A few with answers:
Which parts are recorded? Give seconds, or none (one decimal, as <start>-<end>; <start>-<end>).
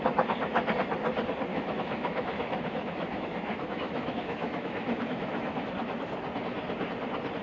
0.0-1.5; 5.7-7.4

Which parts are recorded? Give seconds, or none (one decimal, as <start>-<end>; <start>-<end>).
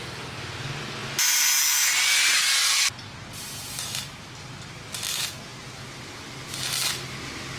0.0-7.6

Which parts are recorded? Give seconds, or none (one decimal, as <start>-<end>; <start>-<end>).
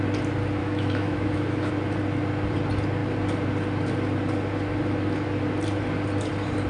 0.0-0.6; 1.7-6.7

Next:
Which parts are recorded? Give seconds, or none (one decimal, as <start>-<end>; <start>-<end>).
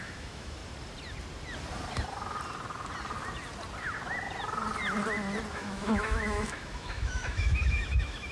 0.6-5.5